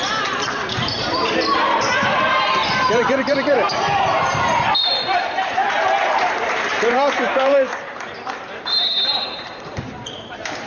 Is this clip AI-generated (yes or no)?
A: yes